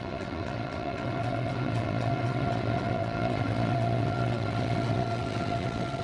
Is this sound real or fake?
fake